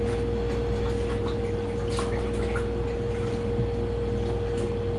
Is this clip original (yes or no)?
yes